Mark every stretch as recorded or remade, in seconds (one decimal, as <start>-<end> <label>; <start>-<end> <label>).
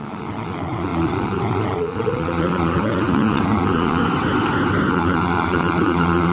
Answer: 0.0-4.0 remade; 4.0-4.9 recorded; 4.9-6.3 remade